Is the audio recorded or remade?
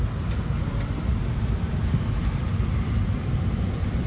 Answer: recorded